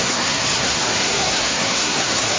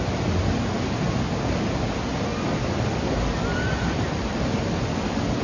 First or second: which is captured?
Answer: second